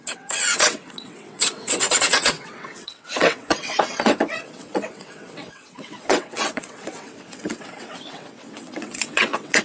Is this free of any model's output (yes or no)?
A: no